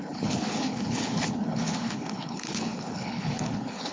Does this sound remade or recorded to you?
remade